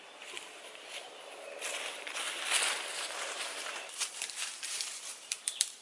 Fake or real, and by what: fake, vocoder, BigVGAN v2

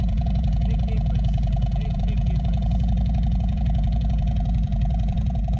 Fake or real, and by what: fake, vocoder, BigVGAN v2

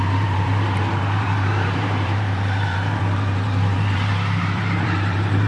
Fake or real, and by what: fake, vocoder, BigVGAN v2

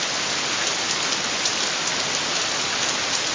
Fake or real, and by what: real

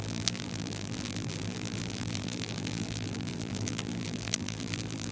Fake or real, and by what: fake, vocoder, BigVGAN v2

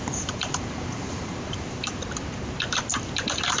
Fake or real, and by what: fake, vocoder, BigVGAN v2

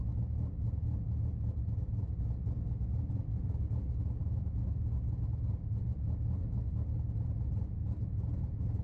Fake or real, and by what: real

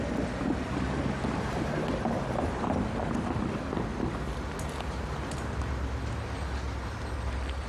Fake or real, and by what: real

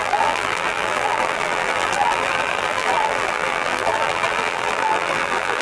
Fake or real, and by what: fake, vocoder, BigVGAN v2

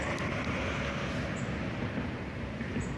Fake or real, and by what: real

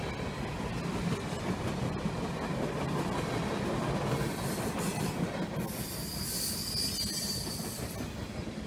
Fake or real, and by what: real